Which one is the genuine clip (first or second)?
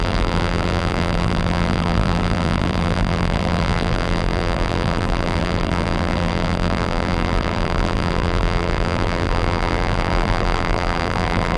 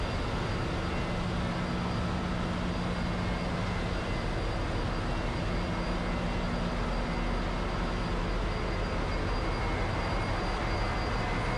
second